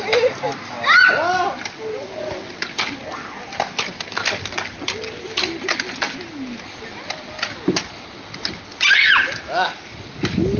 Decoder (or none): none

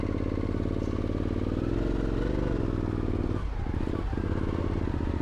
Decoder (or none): none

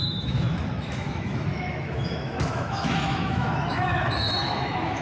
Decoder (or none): autoencoder, DAC-VAE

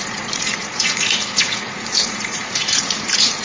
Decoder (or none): vocoder, Vocos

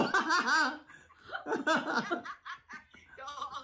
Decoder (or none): none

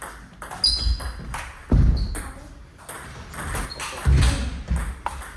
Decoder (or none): none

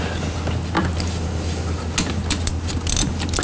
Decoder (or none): none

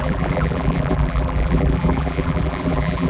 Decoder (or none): vocoder, BigVGAN v2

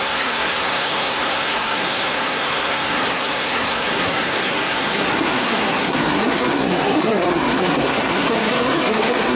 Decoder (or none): codec, SNAC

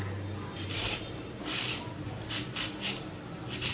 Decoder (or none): none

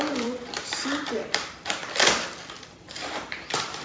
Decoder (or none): vocoder, BigVGAN v2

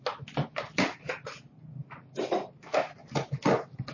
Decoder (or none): none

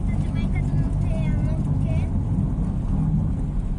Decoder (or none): none